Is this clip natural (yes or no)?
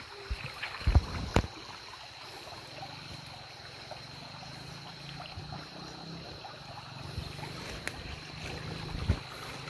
yes